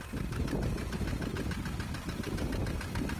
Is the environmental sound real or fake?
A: real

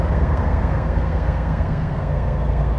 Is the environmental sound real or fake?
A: fake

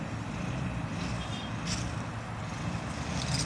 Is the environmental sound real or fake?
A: real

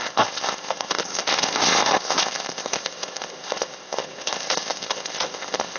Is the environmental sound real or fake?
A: fake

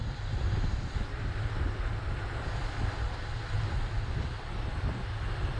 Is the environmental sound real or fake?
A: fake